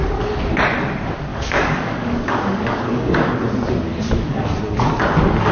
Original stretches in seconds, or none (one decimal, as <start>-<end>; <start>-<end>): 0.0-1.3; 3.3-3.9; 4.5-5.5